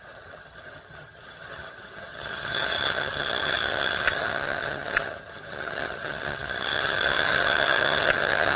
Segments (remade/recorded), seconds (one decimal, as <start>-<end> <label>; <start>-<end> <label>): 0.0-8.6 remade